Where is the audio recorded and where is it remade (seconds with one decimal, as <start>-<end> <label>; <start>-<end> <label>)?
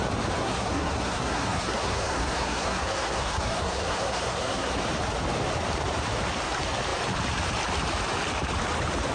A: 0.0-0.4 recorded; 0.4-4.8 remade; 4.8-9.1 recorded